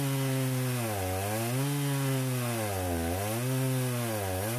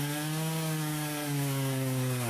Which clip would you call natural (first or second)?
first